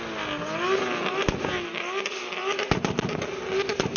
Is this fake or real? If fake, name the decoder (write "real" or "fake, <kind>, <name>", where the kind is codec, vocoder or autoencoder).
real